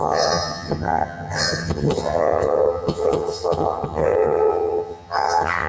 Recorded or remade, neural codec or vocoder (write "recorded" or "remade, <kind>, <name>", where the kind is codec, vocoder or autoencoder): remade, vocoder, HiFi-GAN